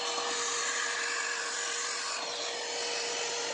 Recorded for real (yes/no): yes